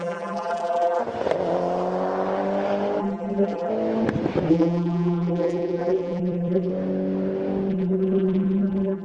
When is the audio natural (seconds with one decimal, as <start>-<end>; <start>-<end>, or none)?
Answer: 1.0-3.0; 3.7-4.5; 6.7-7.7